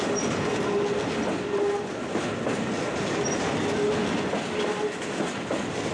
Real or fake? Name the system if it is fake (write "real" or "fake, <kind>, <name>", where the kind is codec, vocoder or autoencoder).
real